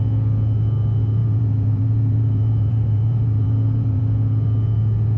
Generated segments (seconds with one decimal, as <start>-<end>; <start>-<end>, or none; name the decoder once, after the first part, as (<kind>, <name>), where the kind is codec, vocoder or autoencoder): 1.2-4.0 (vocoder, BigVGAN v2)